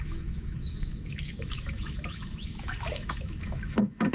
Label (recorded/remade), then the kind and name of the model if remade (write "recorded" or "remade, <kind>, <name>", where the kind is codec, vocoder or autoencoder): remade, autoencoder, DAC-VAE